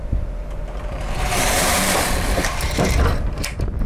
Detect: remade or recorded remade